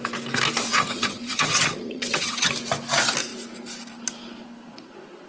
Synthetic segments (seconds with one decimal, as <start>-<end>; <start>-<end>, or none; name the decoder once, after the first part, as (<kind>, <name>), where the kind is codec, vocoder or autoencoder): 0.7-2.5 (vocoder, HiFi-GAN)